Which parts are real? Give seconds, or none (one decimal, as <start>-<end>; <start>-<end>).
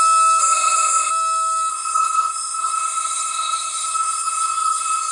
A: 0.0-0.4; 1.1-1.7